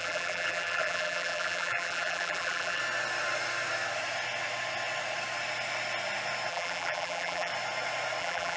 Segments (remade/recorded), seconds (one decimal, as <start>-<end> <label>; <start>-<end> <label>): 0.0-2.8 remade; 2.8-6.5 recorded; 6.5-7.5 remade; 7.5-8.2 recorded; 8.2-8.6 remade